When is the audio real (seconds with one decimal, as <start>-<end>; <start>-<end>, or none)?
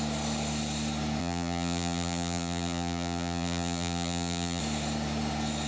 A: 0.0-1.2; 4.6-5.7